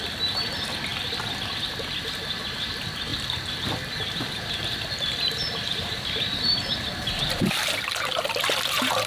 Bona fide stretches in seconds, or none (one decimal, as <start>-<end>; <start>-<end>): 0.0-0.9; 2.4-3.1; 7.9-9.1